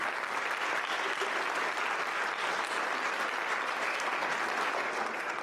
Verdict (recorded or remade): recorded